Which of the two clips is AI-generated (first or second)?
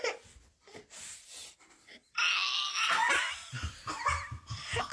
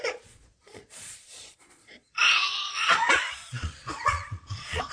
second